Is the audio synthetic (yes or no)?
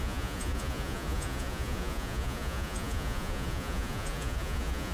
yes